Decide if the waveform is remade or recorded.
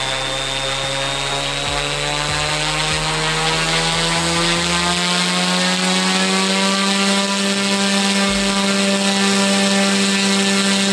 recorded